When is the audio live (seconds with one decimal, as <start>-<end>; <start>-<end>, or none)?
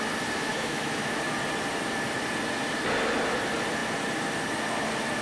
0.0-0.5; 1.1-5.2